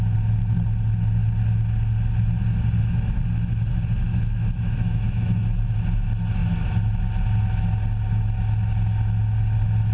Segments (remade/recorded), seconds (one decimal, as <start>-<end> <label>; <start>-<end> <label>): 0.0-4.1 recorded; 4.1-5.6 remade; 5.6-9.9 recorded